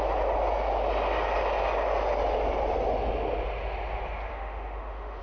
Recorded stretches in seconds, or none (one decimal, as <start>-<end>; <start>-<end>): 0.0-4.3